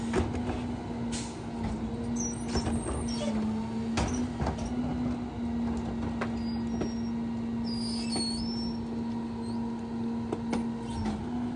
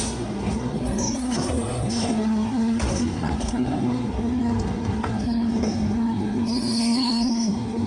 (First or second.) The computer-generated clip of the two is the second